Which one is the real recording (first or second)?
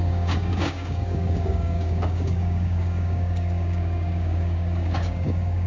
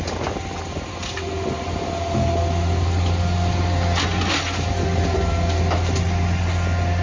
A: second